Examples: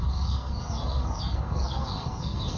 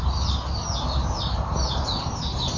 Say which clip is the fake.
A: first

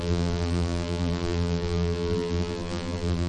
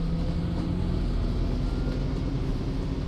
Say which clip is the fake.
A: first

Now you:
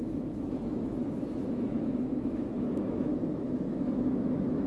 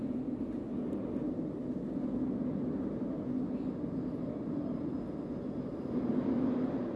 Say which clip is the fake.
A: first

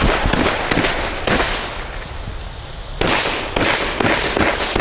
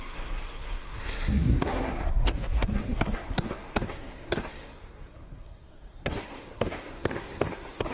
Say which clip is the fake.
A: second